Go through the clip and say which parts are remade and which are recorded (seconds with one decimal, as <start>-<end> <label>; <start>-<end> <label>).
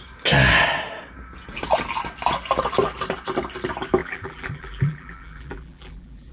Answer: 0.0-4.0 recorded; 4.0-6.3 remade